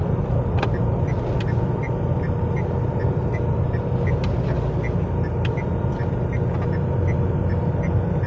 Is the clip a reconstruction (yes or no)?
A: no